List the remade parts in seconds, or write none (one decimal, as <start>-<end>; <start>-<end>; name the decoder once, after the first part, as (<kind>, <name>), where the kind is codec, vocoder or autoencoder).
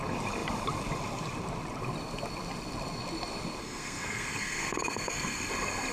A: 3.6-5.5 (codec, SNAC)